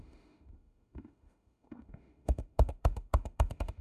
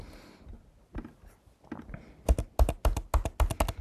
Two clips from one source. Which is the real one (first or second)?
second